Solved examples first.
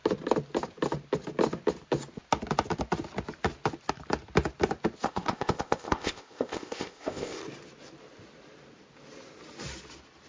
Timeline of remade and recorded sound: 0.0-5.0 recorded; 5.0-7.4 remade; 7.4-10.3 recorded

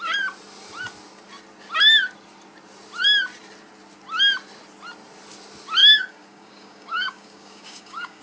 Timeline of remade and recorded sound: 0.0-5.8 recorded; 5.8-8.2 remade

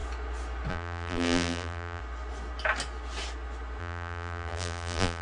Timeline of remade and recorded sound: 0.0-0.7 recorded; 0.7-2.0 remade; 2.0-3.8 recorded; 3.8-5.2 remade

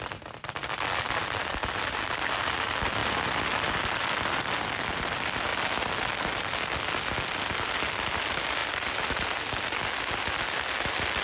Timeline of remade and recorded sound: 0.0-11.2 recorded

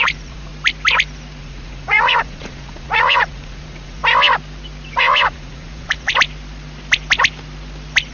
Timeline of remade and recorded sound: 0.0-0.5 remade; 0.5-1.4 recorded; 1.4-4.0 remade; 4.0-4.9 recorded; 4.9-6.1 remade; 6.1-8.1 recorded

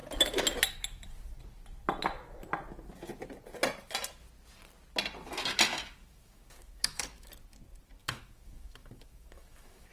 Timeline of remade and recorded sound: 0.0-5.7 recorded; 5.7-7.3 remade; 7.3-8.0 recorded; 8.0-9.9 remade